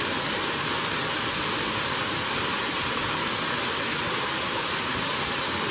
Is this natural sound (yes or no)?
yes